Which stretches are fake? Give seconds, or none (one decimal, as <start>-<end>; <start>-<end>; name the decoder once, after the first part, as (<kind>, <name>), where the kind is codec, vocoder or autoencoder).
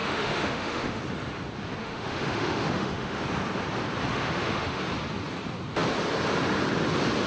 0.0-1.0 (autoencoder, DAC-VAE); 1.8-3.2; 4.1-4.8